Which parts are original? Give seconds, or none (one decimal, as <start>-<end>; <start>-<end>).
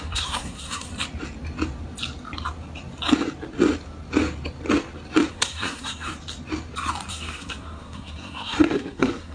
0.9-5.3; 6.1-7.1